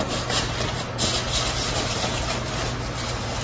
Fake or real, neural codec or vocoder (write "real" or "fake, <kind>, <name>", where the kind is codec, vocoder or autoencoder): real